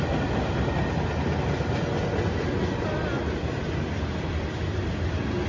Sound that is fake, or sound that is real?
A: real